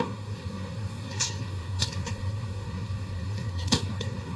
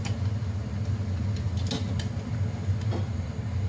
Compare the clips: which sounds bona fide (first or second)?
second